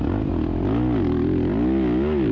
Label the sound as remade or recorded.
recorded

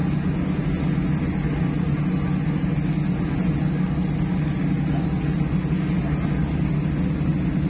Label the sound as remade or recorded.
recorded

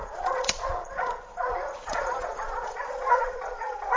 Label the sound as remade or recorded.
remade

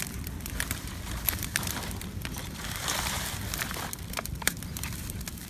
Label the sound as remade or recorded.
remade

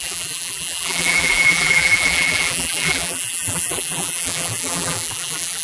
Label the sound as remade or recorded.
remade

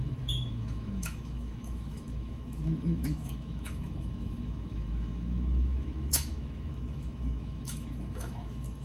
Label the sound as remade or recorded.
remade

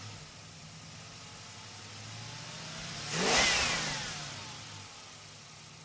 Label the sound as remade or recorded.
recorded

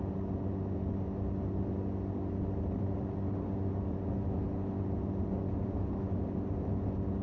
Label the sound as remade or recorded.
recorded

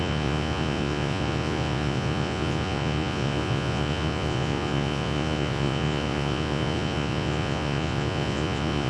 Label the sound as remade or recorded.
remade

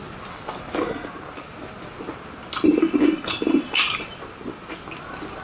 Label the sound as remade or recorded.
recorded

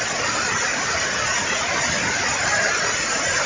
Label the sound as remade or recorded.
recorded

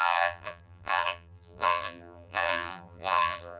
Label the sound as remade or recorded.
remade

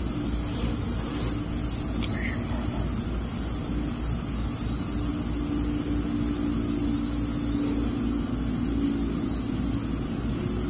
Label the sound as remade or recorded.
recorded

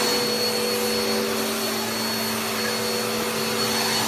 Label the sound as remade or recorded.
recorded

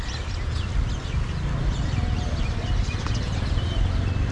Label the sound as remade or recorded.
recorded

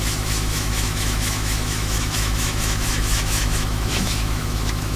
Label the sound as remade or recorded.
remade